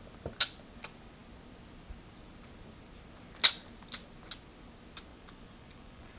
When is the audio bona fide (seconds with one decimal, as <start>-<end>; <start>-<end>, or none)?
0.0-5.1